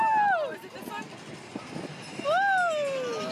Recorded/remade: recorded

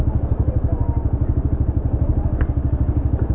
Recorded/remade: recorded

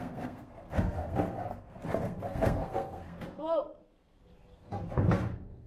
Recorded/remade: remade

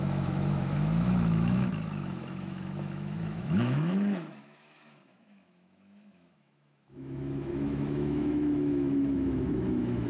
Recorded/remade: remade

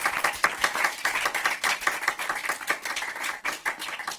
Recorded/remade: remade